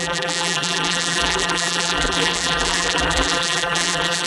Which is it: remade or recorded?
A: remade